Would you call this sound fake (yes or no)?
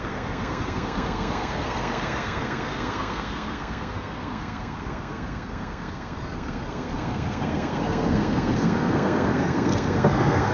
yes